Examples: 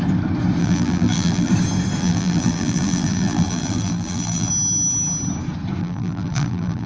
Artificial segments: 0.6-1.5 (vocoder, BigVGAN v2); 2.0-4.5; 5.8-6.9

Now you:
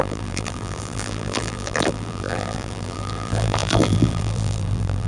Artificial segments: 0.0-5.1 (vocoder, BigVGAN v2)

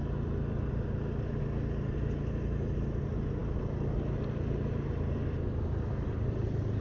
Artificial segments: none

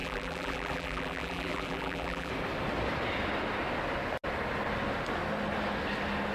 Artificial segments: 0.0-2.3 (vocoder, BigVGAN v2)

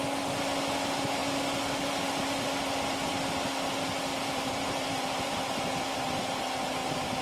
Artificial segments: 4.1-6.5 (vocoder, BigVGAN v2)

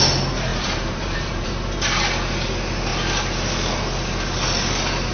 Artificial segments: 0.5-1.5 (vocoder, BigVGAN v2)

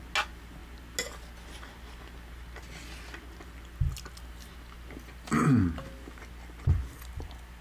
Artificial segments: none